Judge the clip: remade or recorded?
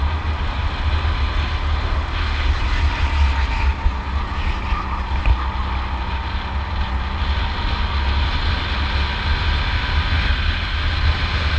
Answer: recorded